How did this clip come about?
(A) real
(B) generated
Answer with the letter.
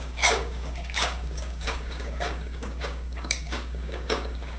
B